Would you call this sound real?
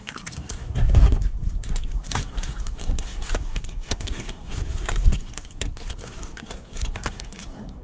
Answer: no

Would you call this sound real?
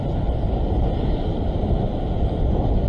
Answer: yes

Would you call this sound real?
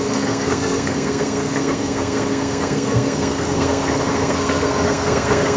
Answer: no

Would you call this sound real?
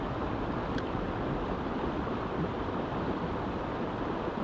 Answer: yes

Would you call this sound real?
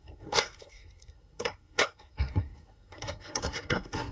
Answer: no